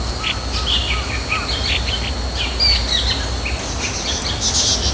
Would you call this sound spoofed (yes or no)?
no